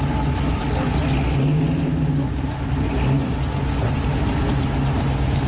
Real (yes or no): yes